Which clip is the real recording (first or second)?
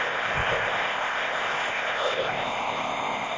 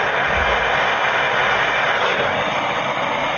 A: second